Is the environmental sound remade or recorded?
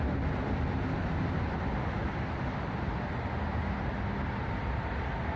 recorded